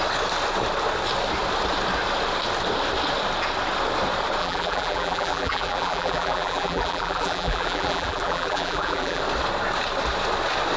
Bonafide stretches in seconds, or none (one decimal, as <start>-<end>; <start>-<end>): 0.0-4.4; 9.2-10.8